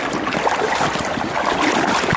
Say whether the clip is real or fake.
real